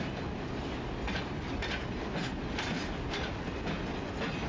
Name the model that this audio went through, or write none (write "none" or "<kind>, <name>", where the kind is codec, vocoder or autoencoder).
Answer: none